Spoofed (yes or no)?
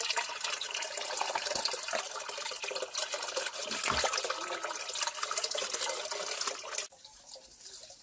no